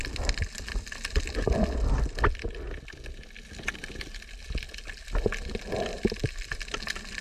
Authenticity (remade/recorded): recorded